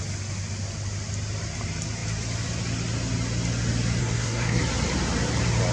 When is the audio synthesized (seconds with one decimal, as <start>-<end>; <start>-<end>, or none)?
4.0-4.6

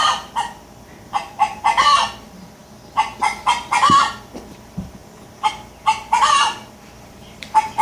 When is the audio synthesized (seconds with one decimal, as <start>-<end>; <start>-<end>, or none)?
0.0-2.6; 3.2-5.0; 5.5-7.8

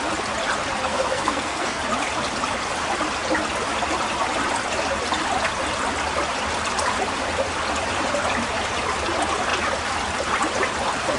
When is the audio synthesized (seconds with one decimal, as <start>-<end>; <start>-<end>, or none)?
0.9-1.8

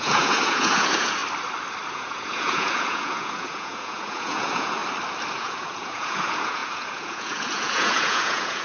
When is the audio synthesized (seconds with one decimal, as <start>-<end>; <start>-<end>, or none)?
0.0-1.2; 1.9-4.8; 5.3-8.6

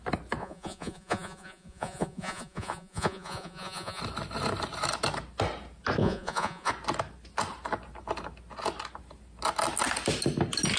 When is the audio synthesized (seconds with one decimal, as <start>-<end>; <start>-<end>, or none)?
0.4-4.0; 6.0-6.7

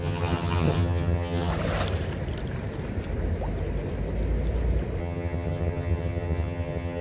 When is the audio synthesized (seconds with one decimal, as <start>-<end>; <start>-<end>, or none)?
0.0-1.5; 5.0-7.0